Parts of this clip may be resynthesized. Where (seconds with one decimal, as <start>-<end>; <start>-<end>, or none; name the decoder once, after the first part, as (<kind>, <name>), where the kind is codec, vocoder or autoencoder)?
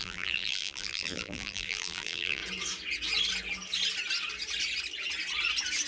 0.0-2.4 (vocoder, BigVGAN v2)